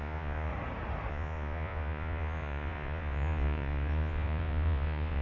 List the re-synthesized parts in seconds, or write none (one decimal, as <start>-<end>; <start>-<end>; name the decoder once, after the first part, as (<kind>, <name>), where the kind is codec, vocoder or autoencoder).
0.0-0.5 (vocoder, Vocos); 1.1-5.2